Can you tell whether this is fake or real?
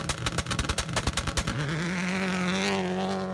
real